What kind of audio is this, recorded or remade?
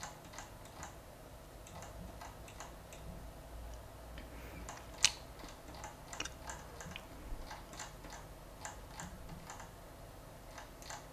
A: recorded